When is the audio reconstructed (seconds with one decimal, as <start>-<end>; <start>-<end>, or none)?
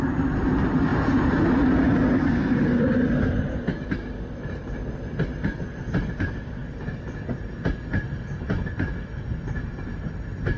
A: none